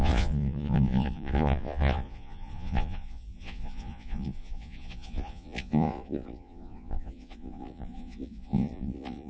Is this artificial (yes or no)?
yes